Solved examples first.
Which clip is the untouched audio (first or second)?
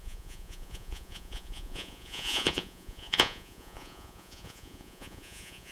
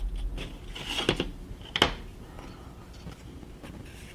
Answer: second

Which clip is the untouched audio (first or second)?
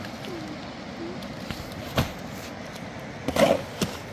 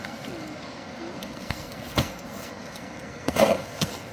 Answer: first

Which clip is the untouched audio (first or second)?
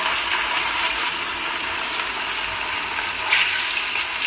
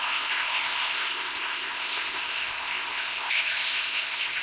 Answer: first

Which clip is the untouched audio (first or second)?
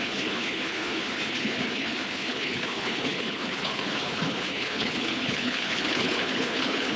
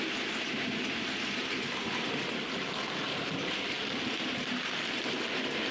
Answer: second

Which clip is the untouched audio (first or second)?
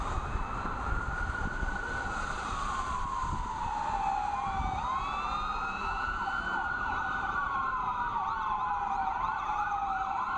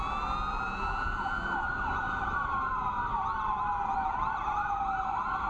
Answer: second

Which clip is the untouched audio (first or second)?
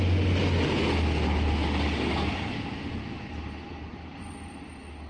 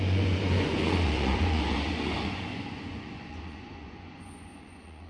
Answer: first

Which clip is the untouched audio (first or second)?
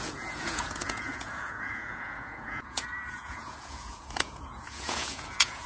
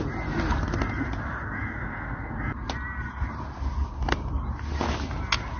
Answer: second